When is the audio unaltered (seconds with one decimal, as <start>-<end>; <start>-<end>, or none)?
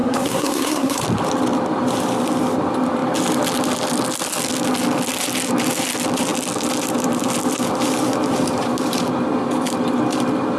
1.0-10.6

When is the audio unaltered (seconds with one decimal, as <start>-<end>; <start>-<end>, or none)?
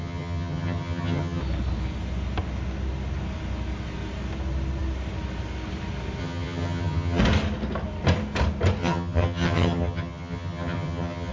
1.4-6.2; 7.2-8.8